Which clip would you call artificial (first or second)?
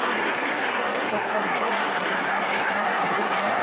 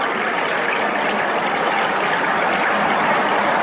first